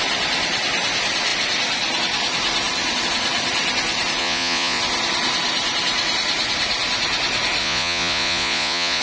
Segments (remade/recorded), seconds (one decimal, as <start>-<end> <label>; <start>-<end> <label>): 0.0-4.2 recorded; 4.2-4.8 remade; 4.8-7.6 recorded; 7.6-9.0 remade